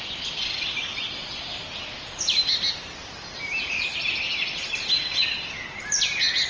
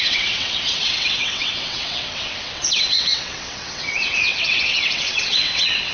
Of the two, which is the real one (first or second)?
first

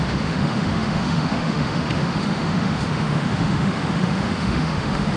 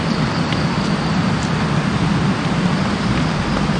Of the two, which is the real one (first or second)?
second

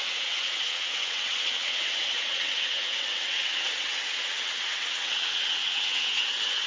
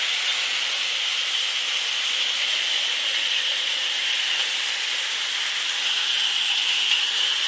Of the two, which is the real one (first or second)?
second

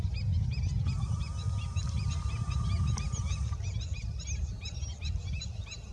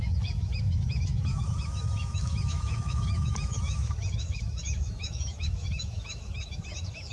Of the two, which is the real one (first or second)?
first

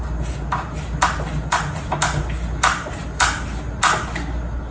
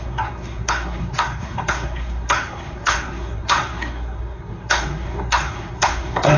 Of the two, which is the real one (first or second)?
first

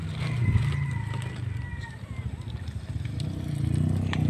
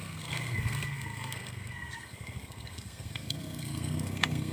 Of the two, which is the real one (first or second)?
first